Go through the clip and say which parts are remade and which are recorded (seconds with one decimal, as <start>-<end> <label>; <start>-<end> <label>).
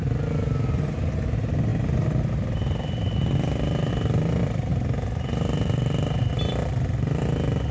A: 0.0-7.7 recorded